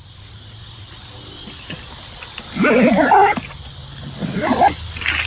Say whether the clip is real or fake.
real